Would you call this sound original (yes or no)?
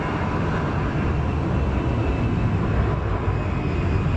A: yes